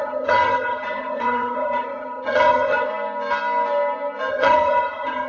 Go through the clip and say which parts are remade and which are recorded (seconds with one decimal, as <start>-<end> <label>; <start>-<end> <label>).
0.0-2.9 remade; 2.9-4.3 recorded; 4.3-5.3 remade